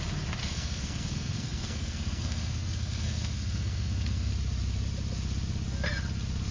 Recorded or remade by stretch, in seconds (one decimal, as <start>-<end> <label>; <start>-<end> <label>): 0.0-0.4 recorded; 0.4-4.3 remade; 4.3-6.5 recorded